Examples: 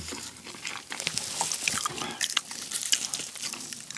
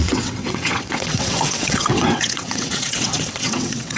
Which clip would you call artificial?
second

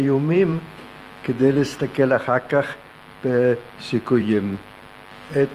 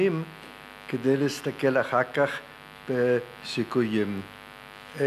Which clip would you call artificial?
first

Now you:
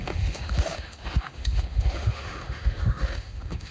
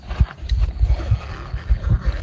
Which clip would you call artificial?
first